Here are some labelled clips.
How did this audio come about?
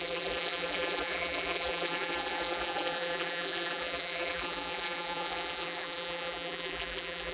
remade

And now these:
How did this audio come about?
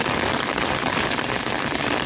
remade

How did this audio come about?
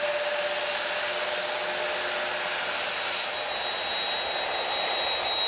recorded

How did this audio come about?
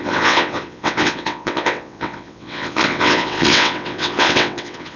remade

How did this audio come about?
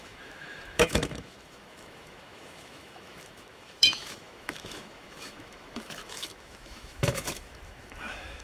remade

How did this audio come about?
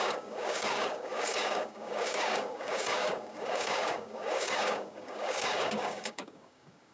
remade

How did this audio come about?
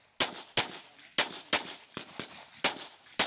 recorded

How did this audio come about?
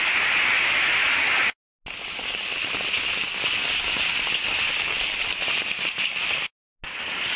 recorded